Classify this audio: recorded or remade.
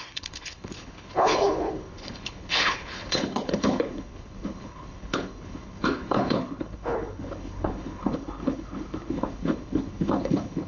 remade